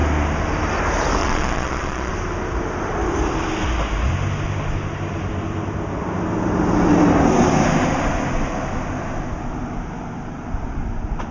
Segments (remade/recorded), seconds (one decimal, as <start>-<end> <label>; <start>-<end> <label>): 0.0-1.2 recorded; 1.2-2.1 remade; 2.1-11.3 recorded